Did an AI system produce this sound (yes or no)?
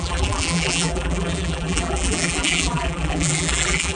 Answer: yes